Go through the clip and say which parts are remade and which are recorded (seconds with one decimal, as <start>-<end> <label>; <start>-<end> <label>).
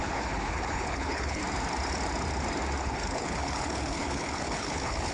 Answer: 0.0-1.4 remade; 1.4-2.8 recorded; 2.8-5.1 remade